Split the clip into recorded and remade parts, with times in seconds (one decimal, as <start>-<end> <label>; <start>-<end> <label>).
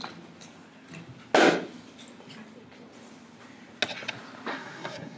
0.0-4.5 recorded; 4.5-5.2 remade